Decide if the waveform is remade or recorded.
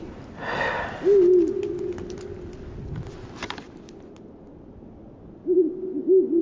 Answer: recorded